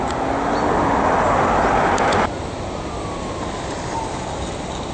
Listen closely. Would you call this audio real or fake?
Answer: real